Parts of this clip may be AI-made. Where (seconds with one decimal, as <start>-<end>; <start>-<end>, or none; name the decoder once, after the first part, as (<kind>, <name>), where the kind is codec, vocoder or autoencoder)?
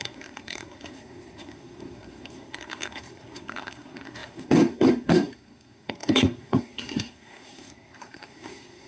0.0-8.9 (codec, SNAC)